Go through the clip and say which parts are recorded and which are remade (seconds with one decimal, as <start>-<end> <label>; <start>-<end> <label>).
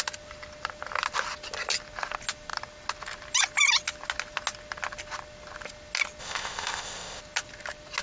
0.0-6.2 recorded; 6.2-7.2 remade; 7.2-8.0 recorded